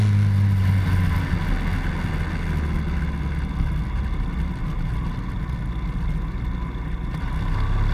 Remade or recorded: recorded